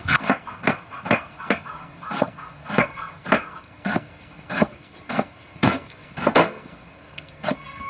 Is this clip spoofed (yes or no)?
yes